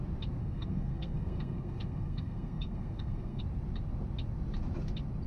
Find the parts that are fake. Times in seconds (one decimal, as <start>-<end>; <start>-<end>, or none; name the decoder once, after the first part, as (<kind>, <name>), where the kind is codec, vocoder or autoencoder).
0.4-3.4 (codec, SNAC)